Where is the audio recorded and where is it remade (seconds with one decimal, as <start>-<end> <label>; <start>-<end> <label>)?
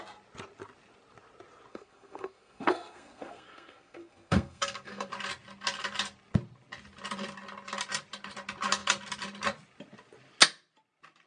0.0-1.7 recorded; 1.7-5.1 remade; 5.1-11.3 recorded